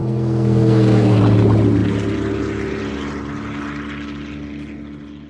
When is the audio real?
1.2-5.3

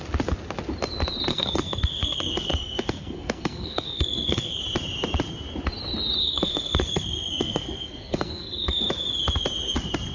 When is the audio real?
0.0-1.3; 4.6-6.2; 8.8-10.1

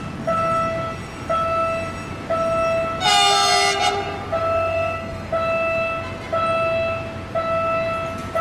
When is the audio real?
0.0-4.4; 5.3-8.4